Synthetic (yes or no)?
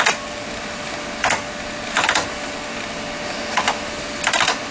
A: no